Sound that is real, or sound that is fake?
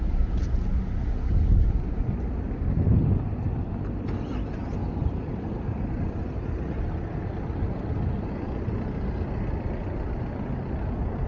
real